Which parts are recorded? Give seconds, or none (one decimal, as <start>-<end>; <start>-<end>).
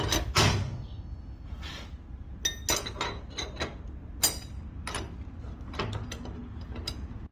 0.0-7.3